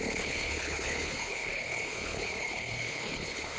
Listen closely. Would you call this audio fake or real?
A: fake